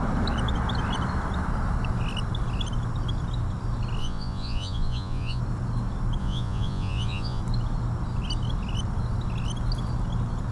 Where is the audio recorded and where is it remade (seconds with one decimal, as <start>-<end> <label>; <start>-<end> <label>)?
0.0-4.0 recorded; 4.0-5.4 remade; 5.4-6.2 recorded; 6.2-7.4 remade; 7.4-10.5 recorded